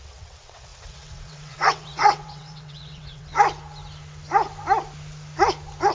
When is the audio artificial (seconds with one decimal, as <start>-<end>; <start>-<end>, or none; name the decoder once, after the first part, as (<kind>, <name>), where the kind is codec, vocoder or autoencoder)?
0.0-3.3 (vocoder, WaveNeXt)

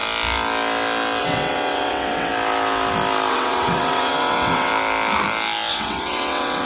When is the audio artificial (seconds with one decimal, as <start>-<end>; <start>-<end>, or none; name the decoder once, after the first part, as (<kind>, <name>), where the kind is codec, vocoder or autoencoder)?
1.2-2.3 (vocoder, WaveNeXt); 3.3-4.7; 5.7-6.7

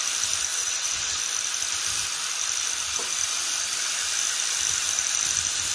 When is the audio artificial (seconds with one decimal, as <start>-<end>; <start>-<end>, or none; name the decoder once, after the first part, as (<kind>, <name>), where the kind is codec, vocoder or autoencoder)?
0.5-1.2 (vocoder, WaveNeXt)